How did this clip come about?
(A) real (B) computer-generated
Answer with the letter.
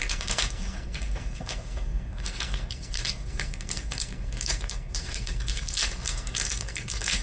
B